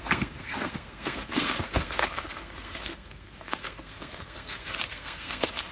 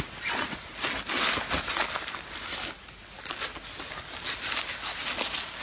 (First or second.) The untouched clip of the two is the second